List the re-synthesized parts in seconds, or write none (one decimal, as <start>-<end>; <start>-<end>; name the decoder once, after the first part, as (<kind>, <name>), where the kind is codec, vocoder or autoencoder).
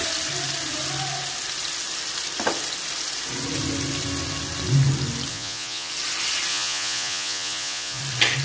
5.3-5.9 (vocoder, Vocos); 6.5-8.0